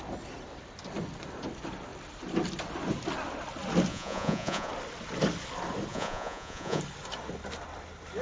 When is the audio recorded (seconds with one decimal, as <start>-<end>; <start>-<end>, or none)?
0.0-3.9; 4.7-5.9; 6.8-8.2